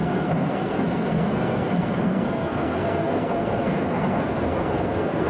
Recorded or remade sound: remade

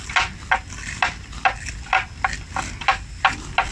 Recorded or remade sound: recorded